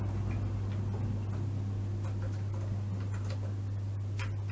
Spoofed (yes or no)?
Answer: no